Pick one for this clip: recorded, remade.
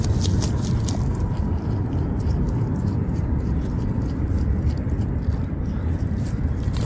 remade